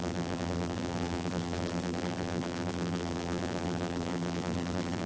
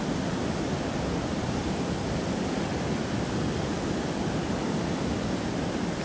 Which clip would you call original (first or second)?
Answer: second